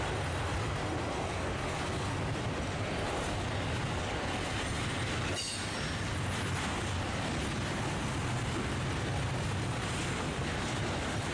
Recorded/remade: recorded